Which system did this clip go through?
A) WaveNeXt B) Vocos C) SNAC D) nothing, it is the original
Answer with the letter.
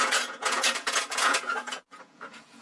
B